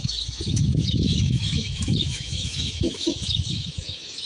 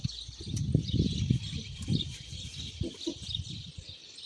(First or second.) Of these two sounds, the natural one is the second